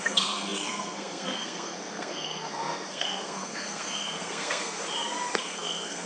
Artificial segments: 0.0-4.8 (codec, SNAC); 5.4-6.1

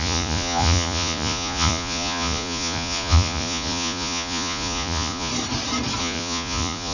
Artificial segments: 0.0-5.3 (vocoder, Vocos); 6.0-6.9

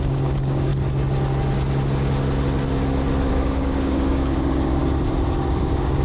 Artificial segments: 0.0-0.7 (codec, DAC); 3.3-4.8; 5.6-6.0

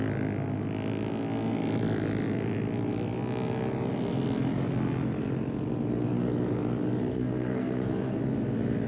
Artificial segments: 7.1-8.2 (codec, SNAC)

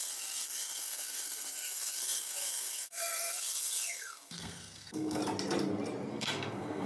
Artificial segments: 0.0-5.2 (codec, SNAC); 6.1-6.9

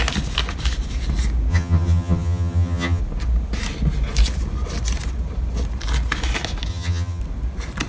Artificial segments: 1.5-3.0 (vocoder, HiFi-GAN); 6.7-7.2

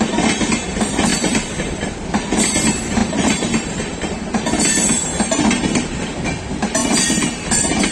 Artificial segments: 1.1-1.9 (vocoder, BigVGAN v2); 3.0-4.2

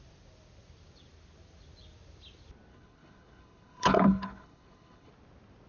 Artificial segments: 2.7-5.1 (codec, HILCodec)